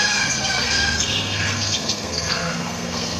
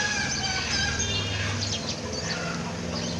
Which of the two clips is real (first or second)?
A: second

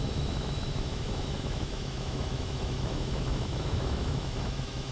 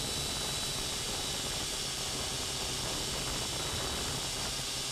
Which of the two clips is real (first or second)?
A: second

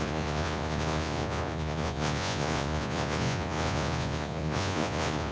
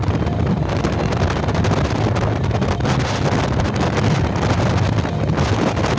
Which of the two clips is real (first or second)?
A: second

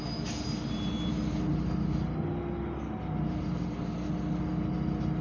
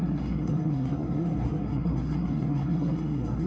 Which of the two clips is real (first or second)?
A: first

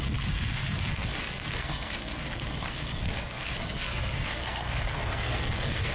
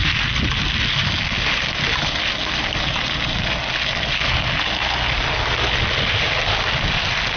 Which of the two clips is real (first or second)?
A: second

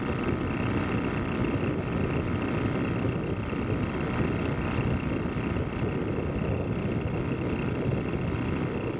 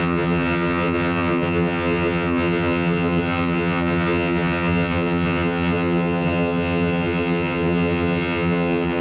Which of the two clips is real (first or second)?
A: first